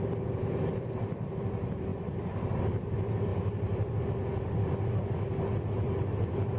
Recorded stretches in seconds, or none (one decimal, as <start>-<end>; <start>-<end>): none